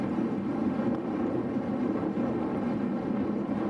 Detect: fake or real fake